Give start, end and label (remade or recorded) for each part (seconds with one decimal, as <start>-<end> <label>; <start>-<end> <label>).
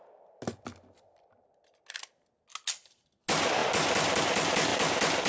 0.0-5.3 recorded